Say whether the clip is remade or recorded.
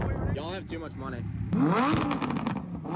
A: recorded